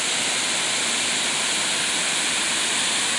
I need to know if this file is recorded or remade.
recorded